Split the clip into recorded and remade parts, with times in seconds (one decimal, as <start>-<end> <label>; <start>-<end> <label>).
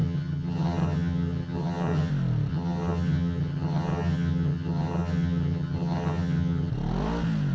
0.0-2.1 remade; 2.1-2.5 recorded; 2.5-6.7 remade; 6.7-7.5 recorded